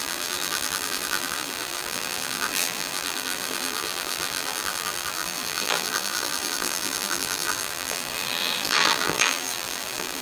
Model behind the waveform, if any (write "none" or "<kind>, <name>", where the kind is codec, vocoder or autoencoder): vocoder, BigVGAN v2